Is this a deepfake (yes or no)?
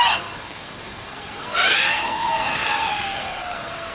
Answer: yes